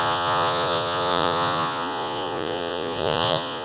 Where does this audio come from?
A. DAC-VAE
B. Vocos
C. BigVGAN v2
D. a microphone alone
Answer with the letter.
B